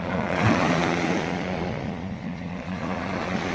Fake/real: fake